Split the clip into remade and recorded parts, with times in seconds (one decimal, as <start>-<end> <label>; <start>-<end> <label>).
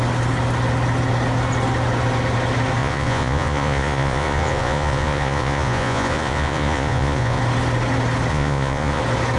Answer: 0.0-2.8 recorded; 2.8-7.4 remade; 7.4-8.3 recorded; 8.3-9.0 remade; 9.0-9.4 recorded